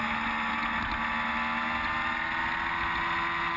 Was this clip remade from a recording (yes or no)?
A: no